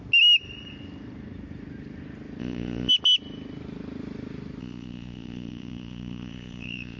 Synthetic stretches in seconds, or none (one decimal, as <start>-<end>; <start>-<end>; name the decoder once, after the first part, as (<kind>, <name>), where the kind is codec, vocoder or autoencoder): 2.4-2.9 (vocoder, Vocos); 4.6-7.0